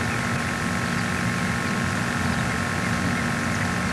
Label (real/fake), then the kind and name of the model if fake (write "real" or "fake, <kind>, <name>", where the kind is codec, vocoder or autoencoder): real